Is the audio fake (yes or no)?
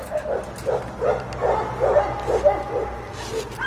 no